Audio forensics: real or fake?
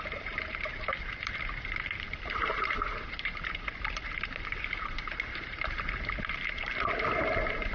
fake